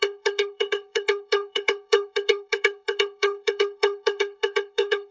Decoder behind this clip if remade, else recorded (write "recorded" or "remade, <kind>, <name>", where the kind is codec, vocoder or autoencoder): remade, codec, HILCodec